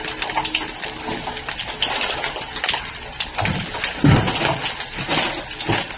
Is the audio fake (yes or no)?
no